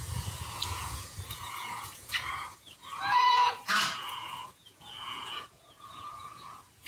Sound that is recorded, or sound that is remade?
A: remade